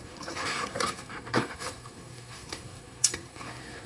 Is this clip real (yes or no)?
no